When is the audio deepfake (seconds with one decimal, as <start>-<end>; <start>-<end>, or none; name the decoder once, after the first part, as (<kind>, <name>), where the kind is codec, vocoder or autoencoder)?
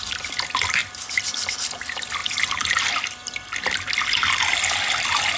none